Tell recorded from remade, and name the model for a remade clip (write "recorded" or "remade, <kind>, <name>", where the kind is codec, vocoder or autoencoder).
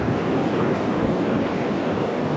remade, codec, DAC